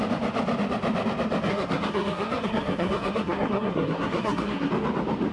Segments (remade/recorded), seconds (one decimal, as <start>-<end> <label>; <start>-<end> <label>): 0.0-1.5 recorded; 1.5-4.7 remade; 4.7-5.3 recorded